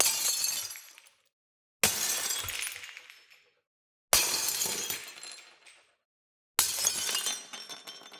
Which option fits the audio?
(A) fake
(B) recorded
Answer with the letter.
B